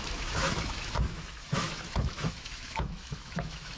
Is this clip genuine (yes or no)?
no